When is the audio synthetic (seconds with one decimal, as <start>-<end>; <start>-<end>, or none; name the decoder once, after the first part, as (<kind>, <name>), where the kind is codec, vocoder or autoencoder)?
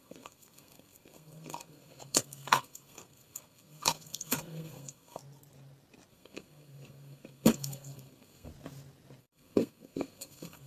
0.0-5.2 (codec, SNAC); 6.1-8.5; 9.2-10.7